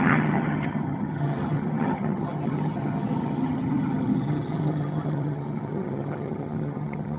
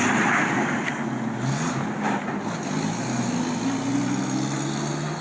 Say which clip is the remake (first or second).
first